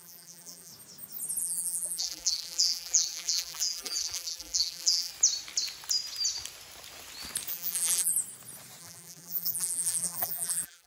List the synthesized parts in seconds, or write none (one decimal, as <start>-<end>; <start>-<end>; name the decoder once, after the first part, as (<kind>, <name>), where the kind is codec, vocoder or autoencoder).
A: 0.0-0.7 (vocoder, BigVGAN v2); 1.4-5.1; 7.5-8.1; 8.8-10.9